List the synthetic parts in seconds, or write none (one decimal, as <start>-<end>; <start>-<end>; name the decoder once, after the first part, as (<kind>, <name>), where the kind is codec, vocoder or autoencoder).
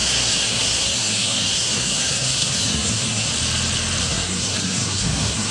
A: 0.0-3.3 (codec, SNAC); 4.0-5.5